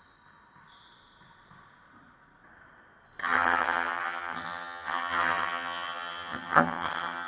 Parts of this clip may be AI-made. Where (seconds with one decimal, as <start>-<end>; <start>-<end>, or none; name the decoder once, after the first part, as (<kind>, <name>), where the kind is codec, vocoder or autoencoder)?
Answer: 3.2-7.3 (vocoder, HiFi-GAN)